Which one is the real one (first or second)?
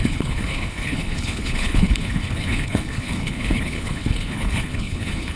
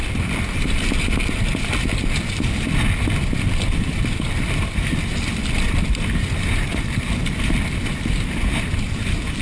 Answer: second